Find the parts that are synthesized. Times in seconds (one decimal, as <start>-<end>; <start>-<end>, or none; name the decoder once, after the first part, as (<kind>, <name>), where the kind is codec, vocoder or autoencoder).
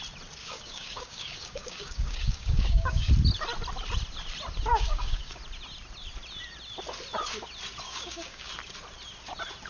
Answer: 0.4-3.1 (codec, DAC); 4.7-5.4; 7.9-8.5